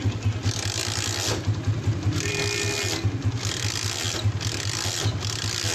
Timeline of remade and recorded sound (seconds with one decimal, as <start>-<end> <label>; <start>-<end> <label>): 0.0-5.7 recorded